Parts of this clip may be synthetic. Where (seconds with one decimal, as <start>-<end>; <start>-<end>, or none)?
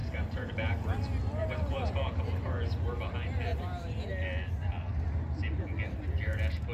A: 0.0-1.9; 3.5-4.1